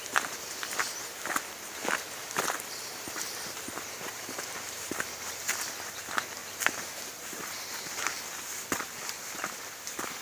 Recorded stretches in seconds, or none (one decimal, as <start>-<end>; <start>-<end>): 0.0-2.2; 4.9-6.4; 8.2-10.2